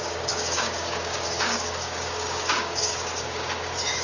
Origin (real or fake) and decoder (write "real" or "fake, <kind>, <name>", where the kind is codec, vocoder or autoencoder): fake, codec, DAC